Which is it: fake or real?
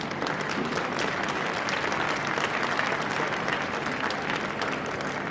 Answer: real